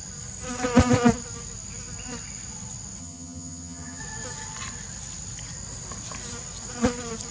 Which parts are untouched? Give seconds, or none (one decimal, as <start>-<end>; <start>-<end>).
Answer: 0.0-3.0; 4.0-7.3